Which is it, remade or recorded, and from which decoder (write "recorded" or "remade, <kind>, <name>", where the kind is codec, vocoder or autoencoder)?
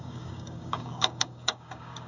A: remade, codec, DAC